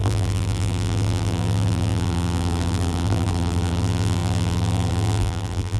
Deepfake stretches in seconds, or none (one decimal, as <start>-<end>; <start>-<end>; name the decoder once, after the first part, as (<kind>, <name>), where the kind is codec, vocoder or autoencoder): 0.0-5.8 (vocoder, BigVGAN v2)